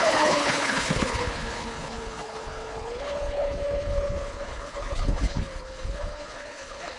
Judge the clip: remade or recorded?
remade